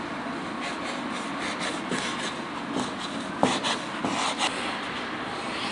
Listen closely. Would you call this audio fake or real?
real